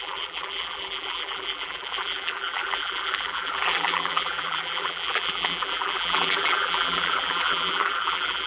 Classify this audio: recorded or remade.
remade